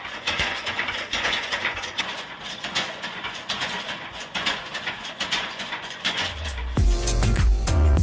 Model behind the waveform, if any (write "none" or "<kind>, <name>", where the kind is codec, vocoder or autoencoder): vocoder, Vocos